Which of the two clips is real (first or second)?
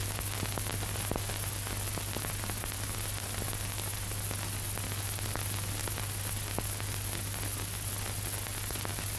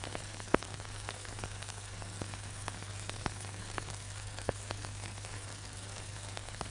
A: first